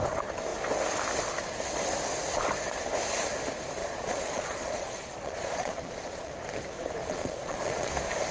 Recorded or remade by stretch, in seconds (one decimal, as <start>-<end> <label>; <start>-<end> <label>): 0.0-3.8 recorded; 3.8-6.3 remade; 6.3-7.0 recorded; 7.0-7.9 remade; 7.9-8.3 recorded